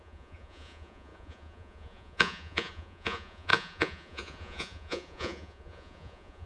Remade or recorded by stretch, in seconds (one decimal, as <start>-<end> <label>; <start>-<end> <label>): 0.0-6.5 remade